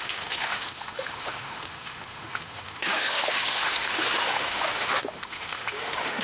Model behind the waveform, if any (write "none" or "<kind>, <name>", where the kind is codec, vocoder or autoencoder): autoencoder, DAC-VAE